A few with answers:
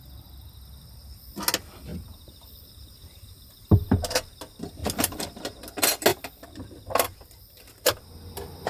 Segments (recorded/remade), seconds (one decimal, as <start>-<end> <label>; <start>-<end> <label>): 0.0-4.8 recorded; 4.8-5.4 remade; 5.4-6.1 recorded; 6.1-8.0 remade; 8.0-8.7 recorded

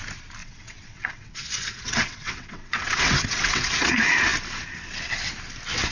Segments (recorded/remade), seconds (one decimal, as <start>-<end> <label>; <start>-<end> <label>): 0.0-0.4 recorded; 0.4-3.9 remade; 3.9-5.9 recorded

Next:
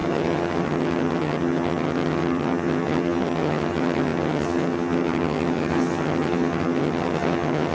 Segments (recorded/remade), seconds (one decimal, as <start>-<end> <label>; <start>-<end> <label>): 0.0-7.7 remade